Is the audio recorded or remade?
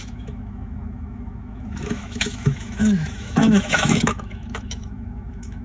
remade